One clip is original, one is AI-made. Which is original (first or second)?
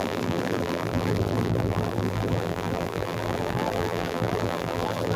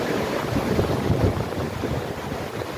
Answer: second